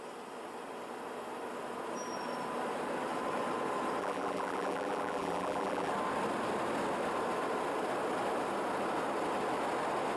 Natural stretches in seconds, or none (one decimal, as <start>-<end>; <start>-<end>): 0.0-4.0; 5.9-10.2